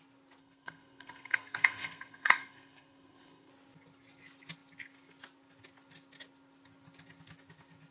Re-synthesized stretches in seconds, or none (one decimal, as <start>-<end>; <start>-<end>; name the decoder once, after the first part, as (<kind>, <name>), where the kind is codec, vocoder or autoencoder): 0.4-3.5 (codec, SNAC)